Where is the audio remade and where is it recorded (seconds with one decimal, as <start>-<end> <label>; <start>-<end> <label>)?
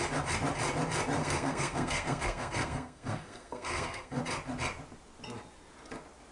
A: 0.0-1.2 recorded; 1.2-4.2 remade; 4.2-6.3 recorded